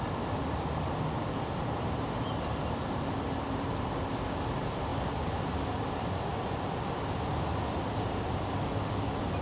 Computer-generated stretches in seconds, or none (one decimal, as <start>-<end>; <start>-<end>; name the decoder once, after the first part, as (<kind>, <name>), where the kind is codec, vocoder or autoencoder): none